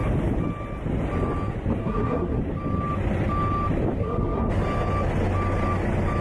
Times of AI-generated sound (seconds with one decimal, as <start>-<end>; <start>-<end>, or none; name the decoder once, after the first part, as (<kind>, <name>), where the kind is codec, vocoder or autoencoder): 1.8-2.4 (codec, SNAC); 4.0-4.5